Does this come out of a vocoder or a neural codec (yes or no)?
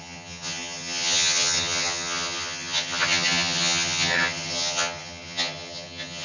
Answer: yes